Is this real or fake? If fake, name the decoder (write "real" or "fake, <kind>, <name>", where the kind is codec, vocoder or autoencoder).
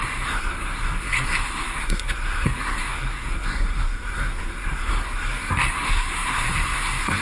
fake, codec, SNAC